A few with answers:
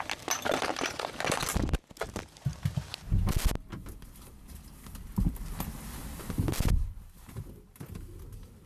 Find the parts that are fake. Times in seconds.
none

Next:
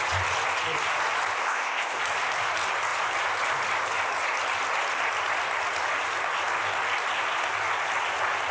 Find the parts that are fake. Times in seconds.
1.4-2.0 (codec, ZipCodec)

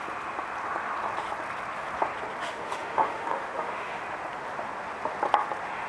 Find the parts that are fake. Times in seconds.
2.4-4.0 (autoencoder, DAC-VAE)

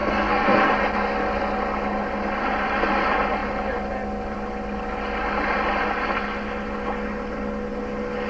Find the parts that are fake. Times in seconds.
0.0-0.7 (codec, SNAC)

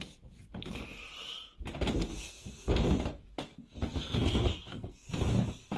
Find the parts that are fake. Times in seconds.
2.1-2.7 (codec, SNAC); 3.5-5.1

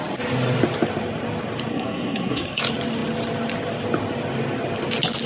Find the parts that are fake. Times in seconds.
1.7-2.6 (codec, SNAC)